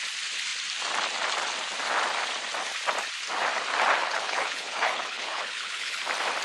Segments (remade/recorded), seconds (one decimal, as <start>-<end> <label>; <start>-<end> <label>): 0.0-4.0 recorded; 4.0-6.0 remade; 6.0-6.4 recorded

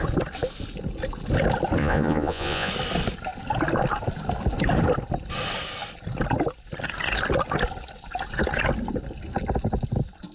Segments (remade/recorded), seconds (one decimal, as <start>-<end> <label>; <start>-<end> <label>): 0.0-1.8 recorded; 1.8-2.7 remade; 2.7-10.3 recorded

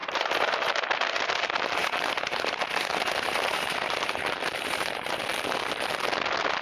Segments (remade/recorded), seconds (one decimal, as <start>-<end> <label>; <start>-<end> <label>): 0.0-0.5 remade; 0.5-1.8 recorded; 1.8-5.2 remade; 5.2-6.6 recorded

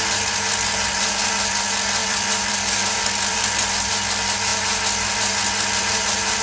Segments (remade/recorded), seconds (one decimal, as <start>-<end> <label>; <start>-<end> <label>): 0.0-2.0 recorded; 2.0-3.7 remade; 3.7-6.4 recorded